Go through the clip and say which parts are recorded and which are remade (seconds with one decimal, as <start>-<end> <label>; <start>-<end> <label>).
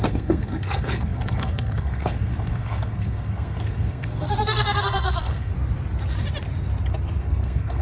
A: 0.0-5.5 remade; 5.5-7.2 recorded; 7.2-7.8 remade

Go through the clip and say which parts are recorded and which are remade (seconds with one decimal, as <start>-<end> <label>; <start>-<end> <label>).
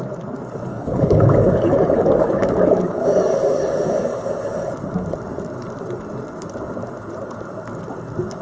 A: 0.0-0.7 recorded; 0.7-4.5 remade; 4.5-8.4 recorded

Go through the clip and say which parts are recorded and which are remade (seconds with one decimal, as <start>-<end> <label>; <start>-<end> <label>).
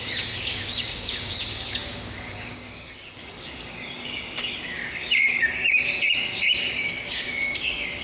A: 0.0-8.0 remade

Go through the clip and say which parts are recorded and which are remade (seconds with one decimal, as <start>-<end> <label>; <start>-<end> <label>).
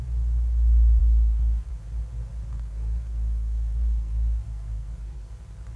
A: 0.0-1.0 recorded; 1.0-1.7 remade; 1.7-2.5 recorded; 2.5-5.3 remade; 5.3-5.8 recorded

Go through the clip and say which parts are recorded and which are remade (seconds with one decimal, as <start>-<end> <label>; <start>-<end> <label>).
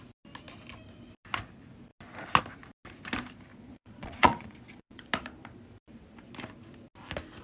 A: 0.0-3.5 recorded; 3.5-5.1 remade; 5.1-7.4 recorded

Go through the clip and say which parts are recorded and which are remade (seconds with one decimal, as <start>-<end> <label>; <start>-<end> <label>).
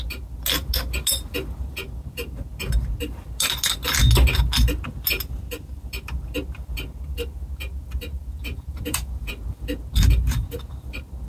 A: 0.0-8.2 recorded; 8.2-9.3 remade; 9.3-11.3 recorded